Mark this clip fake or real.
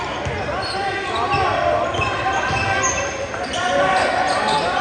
real